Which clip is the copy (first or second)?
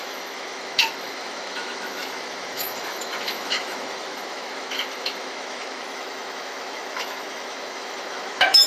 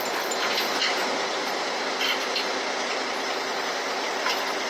first